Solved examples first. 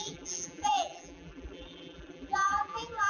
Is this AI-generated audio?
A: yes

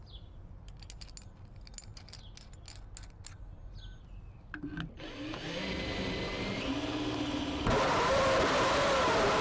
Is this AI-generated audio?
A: no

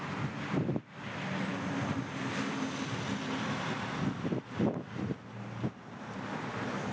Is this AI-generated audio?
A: no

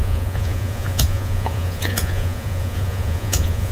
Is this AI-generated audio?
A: yes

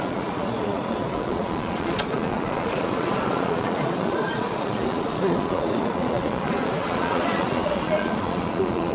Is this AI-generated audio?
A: yes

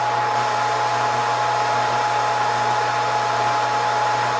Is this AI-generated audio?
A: no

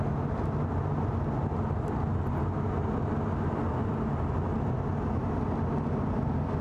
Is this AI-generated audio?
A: no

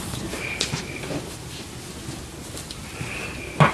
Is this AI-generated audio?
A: no